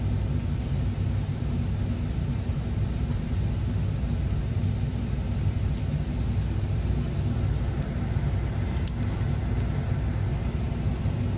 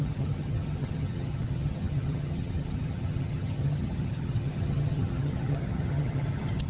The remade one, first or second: second